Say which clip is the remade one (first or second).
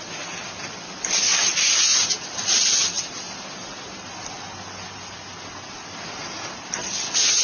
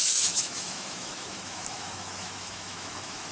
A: second